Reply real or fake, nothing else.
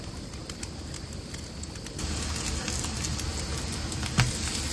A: real